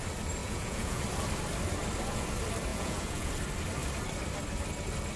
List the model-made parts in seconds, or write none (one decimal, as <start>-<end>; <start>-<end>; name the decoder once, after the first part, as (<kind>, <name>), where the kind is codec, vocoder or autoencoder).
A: 0.4-1.0 (vocoder, Vocos); 2.7-3.3